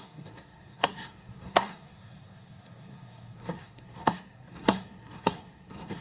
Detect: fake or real fake